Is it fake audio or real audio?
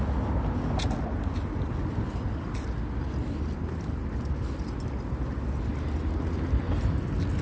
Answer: real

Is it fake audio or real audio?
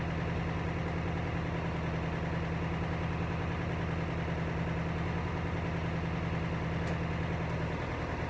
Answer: real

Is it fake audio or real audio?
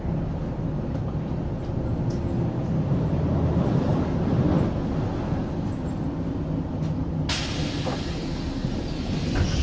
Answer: real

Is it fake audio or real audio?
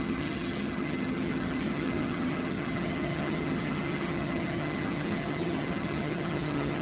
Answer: fake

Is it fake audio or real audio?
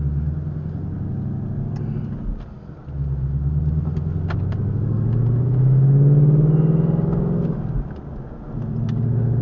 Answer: real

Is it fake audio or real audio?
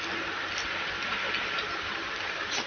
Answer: real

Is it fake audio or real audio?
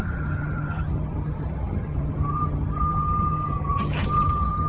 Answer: fake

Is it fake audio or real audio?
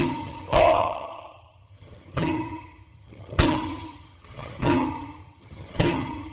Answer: fake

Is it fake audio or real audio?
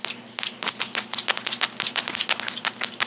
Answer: real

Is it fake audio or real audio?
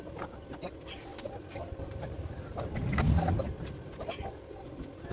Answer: real